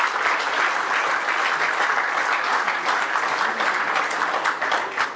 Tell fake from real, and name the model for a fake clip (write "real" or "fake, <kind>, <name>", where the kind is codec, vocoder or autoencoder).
real